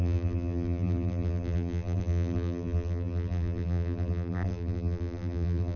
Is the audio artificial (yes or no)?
yes